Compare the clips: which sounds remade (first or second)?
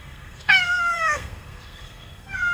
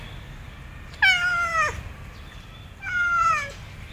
first